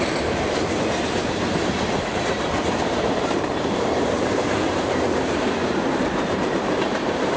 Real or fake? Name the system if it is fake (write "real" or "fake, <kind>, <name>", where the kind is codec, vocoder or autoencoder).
fake, vocoder, BigVGAN v2